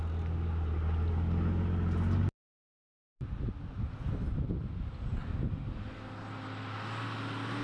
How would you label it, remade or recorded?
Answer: recorded